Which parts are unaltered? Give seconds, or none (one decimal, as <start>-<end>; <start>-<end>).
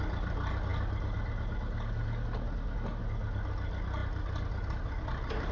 0.0-5.5